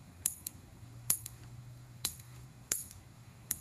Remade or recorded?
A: remade